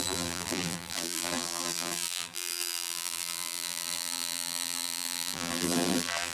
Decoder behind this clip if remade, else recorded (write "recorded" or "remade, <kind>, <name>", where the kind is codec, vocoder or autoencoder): remade, vocoder, BigVGAN v2